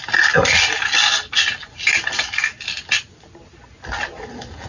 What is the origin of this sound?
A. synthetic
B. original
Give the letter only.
B